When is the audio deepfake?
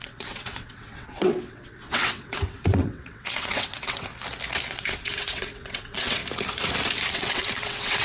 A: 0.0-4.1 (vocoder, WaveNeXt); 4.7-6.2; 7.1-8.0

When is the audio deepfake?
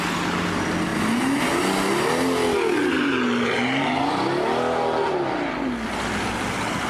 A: none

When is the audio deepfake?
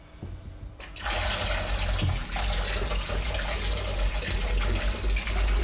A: none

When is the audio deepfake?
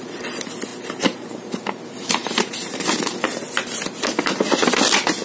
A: 0.7-1.8 (vocoder, BigVGAN v2); 2.2-2.8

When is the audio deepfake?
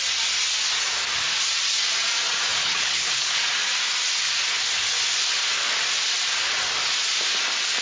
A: 2.6-3.4 (codec, HILCodec)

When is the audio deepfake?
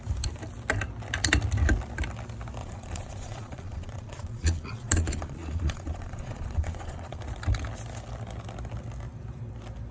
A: 2.6-7.2 (vocoder, Vocos)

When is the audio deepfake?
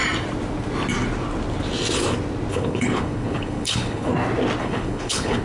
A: 2.5-4.1 (codec, HILCodec); 4.6-5.4